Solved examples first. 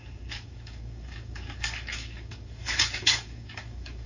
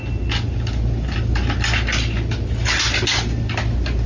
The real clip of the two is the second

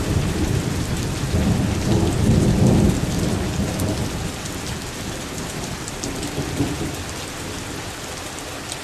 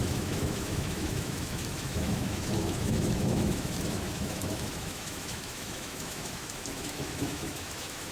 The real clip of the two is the first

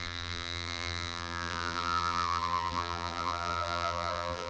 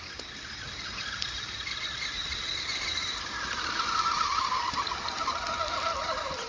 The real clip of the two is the second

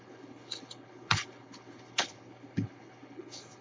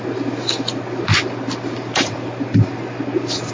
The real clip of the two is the second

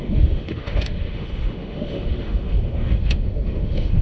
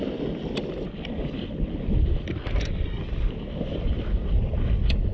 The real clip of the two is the second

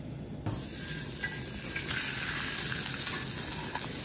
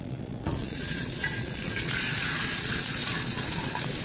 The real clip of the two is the first